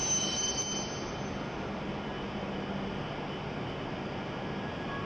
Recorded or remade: recorded